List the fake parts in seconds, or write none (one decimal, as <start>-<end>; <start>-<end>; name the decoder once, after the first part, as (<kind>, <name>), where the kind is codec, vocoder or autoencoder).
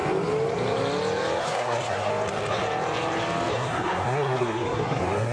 1.4-2.1 (codec, SNAC); 3.5-5.3